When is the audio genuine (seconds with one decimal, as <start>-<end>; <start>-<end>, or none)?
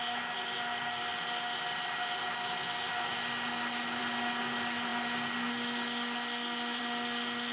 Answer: 0.0-7.5